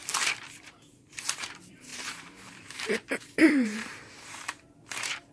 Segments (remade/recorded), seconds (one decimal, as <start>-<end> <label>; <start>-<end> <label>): 0.0-0.6 recorded; 0.6-5.3 remade